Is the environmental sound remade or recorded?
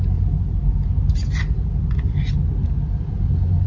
recorded